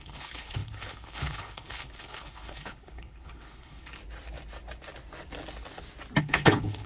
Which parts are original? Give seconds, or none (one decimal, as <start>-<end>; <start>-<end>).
4.0-6.2